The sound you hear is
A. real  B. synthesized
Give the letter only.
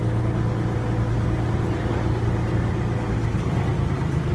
A